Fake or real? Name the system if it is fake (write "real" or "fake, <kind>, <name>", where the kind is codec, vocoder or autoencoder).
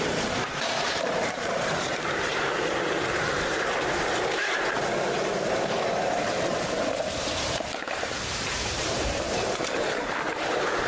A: fake, vocoder, BigVGAN v2